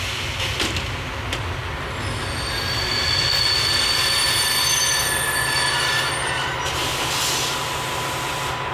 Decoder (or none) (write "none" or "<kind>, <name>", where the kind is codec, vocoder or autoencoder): none